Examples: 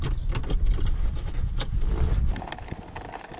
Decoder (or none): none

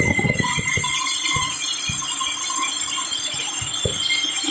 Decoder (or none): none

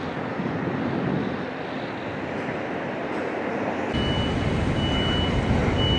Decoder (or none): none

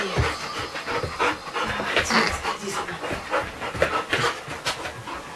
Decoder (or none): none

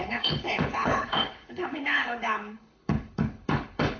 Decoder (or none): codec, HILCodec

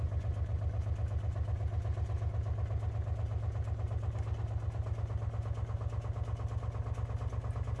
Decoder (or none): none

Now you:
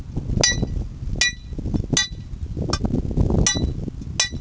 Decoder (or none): none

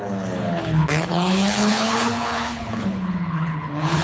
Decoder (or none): codec, HILCodec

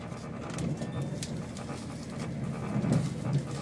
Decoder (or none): none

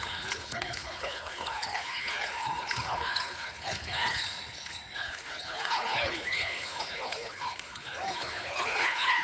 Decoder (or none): codec, HILCodec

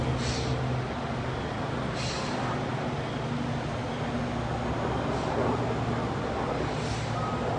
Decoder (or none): none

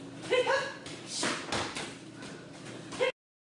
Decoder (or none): none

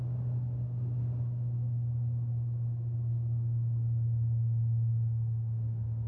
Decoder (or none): none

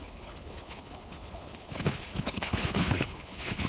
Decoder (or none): codec, HILCodec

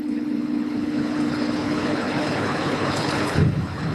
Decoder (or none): codec, HILCodec